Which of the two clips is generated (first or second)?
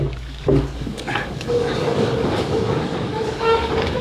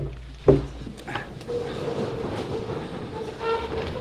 first